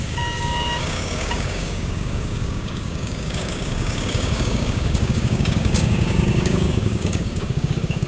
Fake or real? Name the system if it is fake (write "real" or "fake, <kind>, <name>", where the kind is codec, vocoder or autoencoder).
fake, codec, DAC